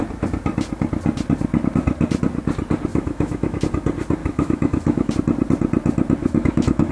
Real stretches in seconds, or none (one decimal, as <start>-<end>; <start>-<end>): 0.0-2.9; 3.6-4.2; 5.1-6.2